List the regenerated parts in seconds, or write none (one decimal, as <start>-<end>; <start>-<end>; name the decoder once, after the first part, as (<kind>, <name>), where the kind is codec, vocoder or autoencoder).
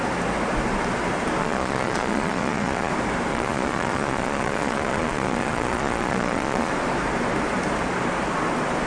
1.4-2.9 (vocoder, Vocos); 3.3-6.7